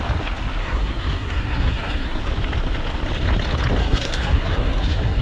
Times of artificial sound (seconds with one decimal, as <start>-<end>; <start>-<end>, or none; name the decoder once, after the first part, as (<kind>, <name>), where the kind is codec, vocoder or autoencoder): 0.6-2.2 (codec, SNAC); 3.8-5.2